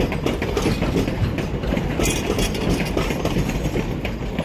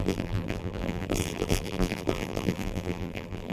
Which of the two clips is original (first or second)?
first